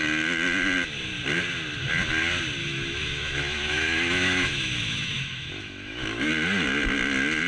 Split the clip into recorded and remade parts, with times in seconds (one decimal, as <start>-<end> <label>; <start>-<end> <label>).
0.0-2.6 recorded; 2.6-6.3 remade; 6.3-7.5 recorded